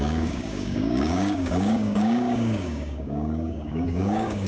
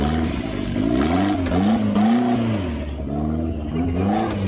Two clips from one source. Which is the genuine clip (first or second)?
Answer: second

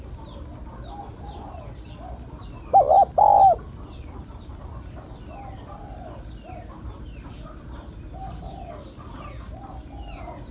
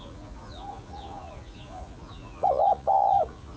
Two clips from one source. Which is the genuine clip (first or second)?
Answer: first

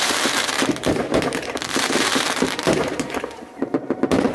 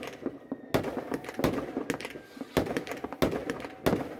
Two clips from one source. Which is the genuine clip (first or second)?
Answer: second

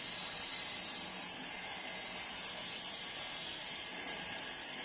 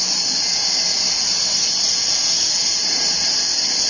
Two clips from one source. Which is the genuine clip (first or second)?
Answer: second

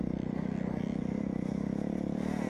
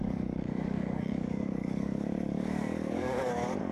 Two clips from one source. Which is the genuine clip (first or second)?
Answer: first